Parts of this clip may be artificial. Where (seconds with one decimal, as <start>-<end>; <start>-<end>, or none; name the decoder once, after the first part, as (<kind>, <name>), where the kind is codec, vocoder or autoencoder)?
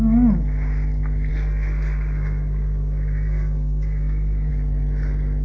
1.3-4.5 (codec, SNAC)